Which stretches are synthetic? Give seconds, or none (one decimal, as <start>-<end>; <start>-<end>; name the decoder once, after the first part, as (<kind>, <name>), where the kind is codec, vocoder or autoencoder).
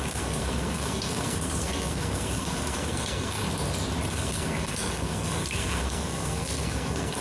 0.0-3.4 (codec, SNAC); 4.1-7.2